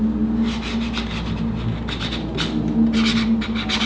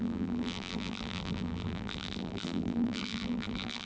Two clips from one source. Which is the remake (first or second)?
second